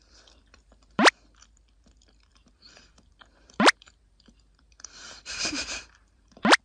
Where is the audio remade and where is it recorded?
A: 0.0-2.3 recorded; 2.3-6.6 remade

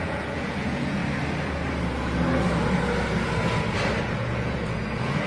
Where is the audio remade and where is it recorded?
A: 0.0-1.0 remade; 1.0-4.0 recorded; 4.0-5.3 remade

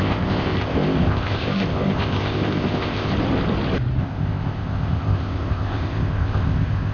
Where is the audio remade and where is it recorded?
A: 0.0-3.1 remade; 3.1-4.0 recorded; 4.0-6.9 remade

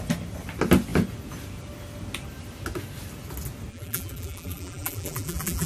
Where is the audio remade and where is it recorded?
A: 0.0-3.7 recorded; 3.7-5.7 remade

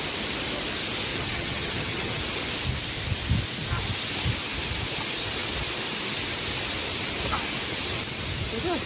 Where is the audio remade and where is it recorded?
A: 0.0-1.1 recorded; 1.1-2.2 remade; 2.2-8.9 recorded

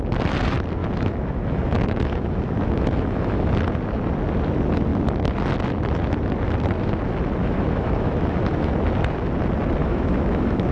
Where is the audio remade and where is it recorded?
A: 0.0-0.8 recorded; 0.8-3.5 remade; 3.5-7.4 recorded; 7.4-8.7 remade; 8.7-9.8 recorded; 9.8-10.7 remade